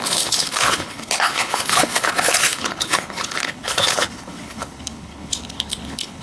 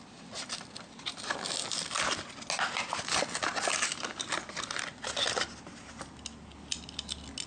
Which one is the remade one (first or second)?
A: first